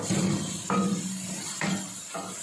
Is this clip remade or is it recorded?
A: recorded